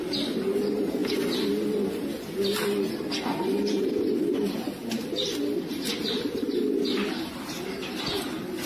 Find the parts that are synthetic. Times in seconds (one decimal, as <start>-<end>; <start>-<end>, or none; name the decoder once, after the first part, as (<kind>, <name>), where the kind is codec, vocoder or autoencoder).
none